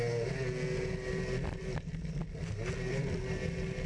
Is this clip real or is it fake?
real